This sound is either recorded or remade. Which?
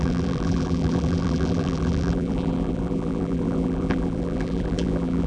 remade